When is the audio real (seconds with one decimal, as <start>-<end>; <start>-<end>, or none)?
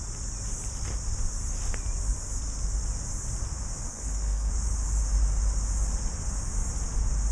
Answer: 0.0-3.9; 4.5-7.3